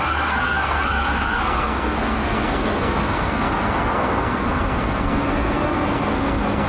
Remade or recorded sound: remade